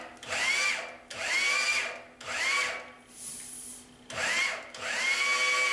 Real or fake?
real